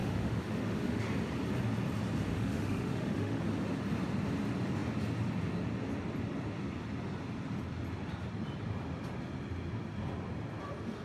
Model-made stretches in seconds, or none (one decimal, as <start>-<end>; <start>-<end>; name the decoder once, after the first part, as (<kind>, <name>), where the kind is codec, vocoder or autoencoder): 0.0-1.1 (autoencoder, DAC-VAE); 2.3-3.4